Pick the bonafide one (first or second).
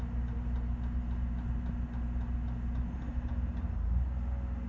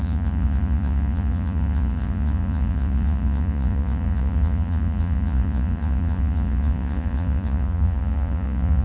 first